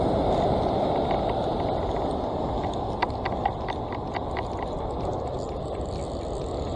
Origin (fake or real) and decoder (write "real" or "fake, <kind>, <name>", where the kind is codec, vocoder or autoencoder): real